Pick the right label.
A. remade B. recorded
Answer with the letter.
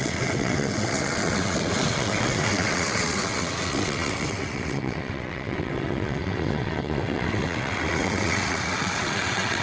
A